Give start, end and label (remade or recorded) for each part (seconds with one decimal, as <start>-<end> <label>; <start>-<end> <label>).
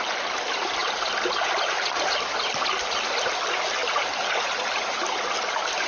0.0-5.9 recorded